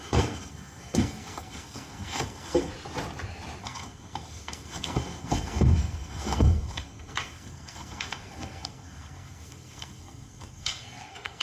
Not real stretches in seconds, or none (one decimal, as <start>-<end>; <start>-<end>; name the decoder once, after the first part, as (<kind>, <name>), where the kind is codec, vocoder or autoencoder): 0.0-2.7 (codec, SNAC); 3.6-11.4

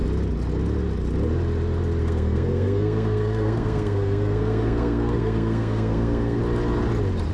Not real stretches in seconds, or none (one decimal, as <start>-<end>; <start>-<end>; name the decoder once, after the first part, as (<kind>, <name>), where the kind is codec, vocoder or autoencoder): 2.0-6.4 (codec, SNAC)

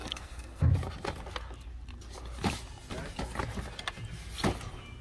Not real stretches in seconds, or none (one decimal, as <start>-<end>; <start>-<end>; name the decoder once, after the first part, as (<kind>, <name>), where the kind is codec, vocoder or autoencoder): 0.0-0.7 (codec, SNAC)

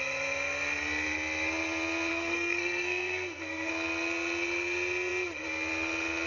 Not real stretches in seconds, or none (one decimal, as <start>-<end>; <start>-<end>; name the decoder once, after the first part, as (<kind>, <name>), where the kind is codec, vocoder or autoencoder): 2.1-3.7 (codec, SNAC)

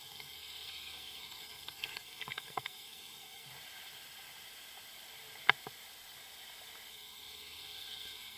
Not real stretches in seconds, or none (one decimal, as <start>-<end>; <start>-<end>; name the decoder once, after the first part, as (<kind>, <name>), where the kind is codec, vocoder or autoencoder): 0.0-3.5 (codec, SNAC); 6.9-8.4

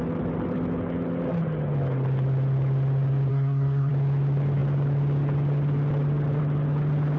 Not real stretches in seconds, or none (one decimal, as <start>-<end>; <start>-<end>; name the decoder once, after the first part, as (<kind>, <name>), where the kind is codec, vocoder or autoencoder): 3.3-3.9 (codec, SNAC)

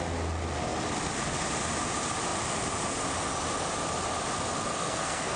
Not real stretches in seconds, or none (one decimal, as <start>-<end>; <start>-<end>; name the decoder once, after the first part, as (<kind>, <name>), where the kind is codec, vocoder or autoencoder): 4.7-5.4 (codec, SNAC)